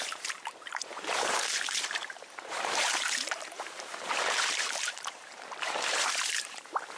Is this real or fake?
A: fake